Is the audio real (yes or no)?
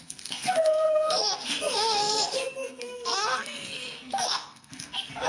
no